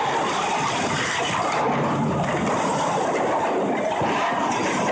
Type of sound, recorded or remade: remade